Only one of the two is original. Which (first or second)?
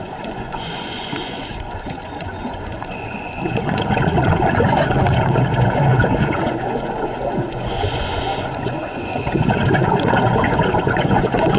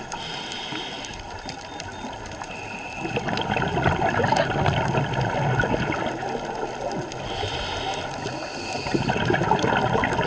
second